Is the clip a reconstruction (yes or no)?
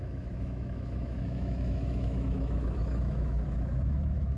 yes